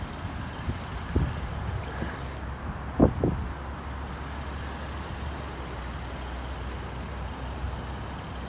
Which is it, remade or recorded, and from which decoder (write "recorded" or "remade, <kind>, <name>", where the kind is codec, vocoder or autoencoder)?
recorded